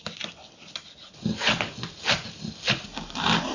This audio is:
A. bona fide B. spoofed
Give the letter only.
A